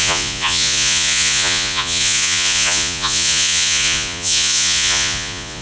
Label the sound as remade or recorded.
remade